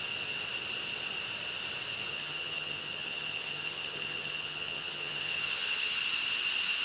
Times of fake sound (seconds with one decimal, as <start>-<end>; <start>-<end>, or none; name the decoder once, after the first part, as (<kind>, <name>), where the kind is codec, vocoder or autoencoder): 2.1-6.0 (vocoder, HiFi-GAN)